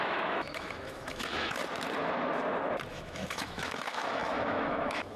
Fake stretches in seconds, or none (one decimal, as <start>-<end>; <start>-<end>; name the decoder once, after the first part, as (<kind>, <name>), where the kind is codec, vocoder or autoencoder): 0.0-1.6 (autoencoder, DAC-VAE); 2.9-5.2